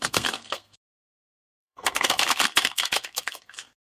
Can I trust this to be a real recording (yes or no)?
no